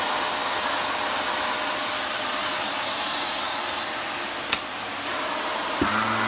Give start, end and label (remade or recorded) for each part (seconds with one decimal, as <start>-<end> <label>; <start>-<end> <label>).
0.0-6.3 recorded